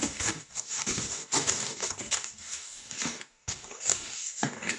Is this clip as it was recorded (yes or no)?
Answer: no